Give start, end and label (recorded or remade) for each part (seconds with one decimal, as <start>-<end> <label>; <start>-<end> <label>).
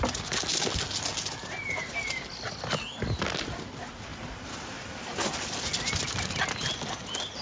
0.0-7.4 recorded